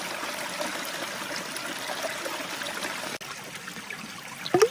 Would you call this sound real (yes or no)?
yes